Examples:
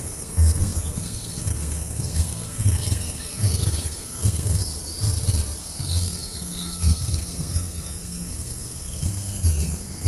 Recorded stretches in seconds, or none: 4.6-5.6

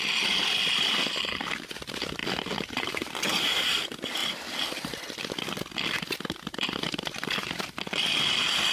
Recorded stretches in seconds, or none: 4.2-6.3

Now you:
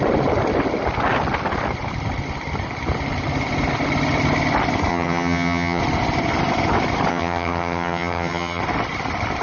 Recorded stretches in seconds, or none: 0.0-4.9; 5.8-7.1; 8.6-9.4

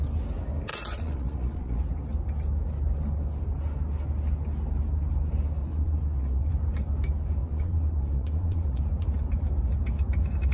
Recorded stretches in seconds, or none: 0.0-0.7; 1.8-5.6; 6.5-7.4; 8.8-10.5